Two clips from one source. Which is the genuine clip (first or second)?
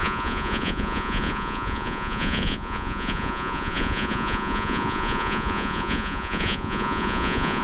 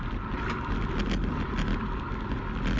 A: second